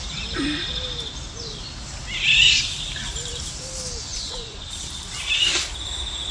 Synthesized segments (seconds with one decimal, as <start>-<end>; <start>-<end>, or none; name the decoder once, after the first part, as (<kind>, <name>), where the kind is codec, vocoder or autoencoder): 4.1-4.7 (vocoder, Vocos)